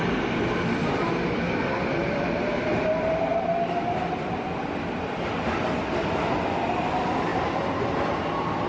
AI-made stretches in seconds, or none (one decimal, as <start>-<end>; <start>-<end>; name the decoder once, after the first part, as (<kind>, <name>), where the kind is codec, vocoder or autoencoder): none

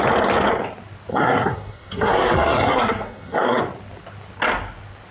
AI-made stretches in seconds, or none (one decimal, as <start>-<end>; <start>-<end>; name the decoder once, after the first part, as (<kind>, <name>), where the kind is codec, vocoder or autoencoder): 1.1-3.6 (codec, SNAC)

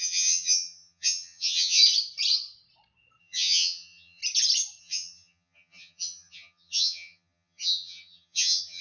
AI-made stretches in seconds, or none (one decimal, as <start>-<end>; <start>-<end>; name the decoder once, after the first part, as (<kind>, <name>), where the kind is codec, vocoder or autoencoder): 0.0-1.8 (vocoder, HiFi-GAN); 3.2-4.2; 4.8-8.8